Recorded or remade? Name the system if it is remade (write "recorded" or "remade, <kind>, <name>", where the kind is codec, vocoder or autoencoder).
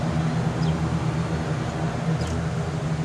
recorded